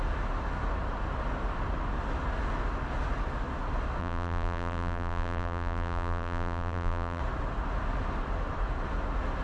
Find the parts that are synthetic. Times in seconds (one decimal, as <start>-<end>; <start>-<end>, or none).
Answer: 4.0-7.2